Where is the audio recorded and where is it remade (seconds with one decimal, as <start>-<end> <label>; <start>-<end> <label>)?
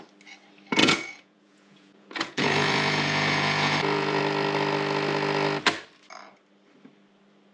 0.0-0.8 recorded; 0.8-4.2 remade; 4.2-7.5 recorded